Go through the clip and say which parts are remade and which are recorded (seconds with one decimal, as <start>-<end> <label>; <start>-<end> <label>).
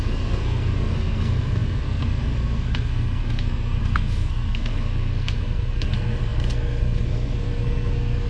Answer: 0.0-8.3 remade